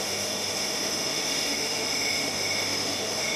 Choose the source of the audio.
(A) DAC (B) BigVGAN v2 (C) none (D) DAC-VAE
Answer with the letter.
D